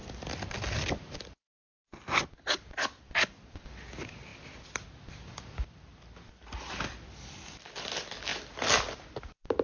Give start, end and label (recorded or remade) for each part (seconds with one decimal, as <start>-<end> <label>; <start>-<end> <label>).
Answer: 0.0-9.6 recorded